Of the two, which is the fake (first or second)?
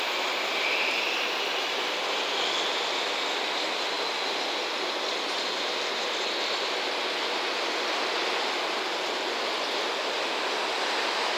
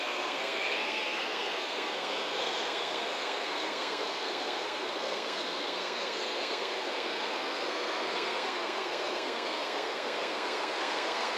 second